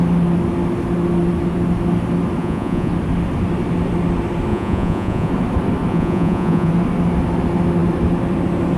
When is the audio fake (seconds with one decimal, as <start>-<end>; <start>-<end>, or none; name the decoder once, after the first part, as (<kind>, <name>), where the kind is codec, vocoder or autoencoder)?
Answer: 2.4-2.9 (vocoder, Vocos); 4.5-5.3; 5.9-6.7